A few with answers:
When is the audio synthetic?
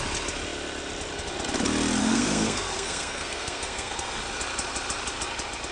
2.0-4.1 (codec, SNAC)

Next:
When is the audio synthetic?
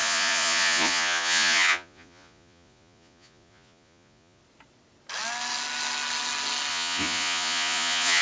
0.0-4.4 (vocoder, Vocos); 6.7-8.2